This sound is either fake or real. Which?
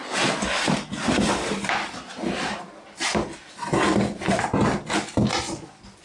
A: real